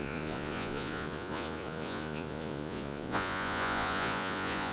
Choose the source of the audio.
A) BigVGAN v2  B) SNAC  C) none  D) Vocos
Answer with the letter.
D